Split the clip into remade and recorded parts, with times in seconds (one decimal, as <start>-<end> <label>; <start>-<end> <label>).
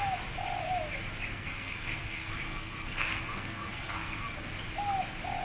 0.0-1.3 recorded; 1.3-4.5 remade; 4.5-5.4 recorded